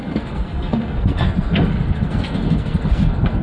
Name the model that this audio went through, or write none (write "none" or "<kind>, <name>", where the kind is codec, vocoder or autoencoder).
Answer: codec, SNAC